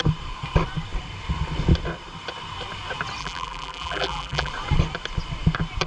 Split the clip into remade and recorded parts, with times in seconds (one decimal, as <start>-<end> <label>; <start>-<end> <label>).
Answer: 0.0-3.2 recorded; 3.2-4.5 remade; 4.5-5.9 recorded